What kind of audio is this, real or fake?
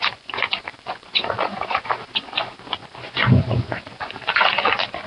fake